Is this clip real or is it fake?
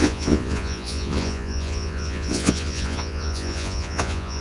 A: fake